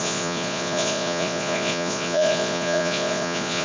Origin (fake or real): fake